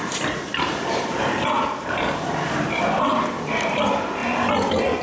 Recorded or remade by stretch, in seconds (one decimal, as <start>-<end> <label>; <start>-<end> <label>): 0.0-2.8 remade; 2.8-5.0 recorded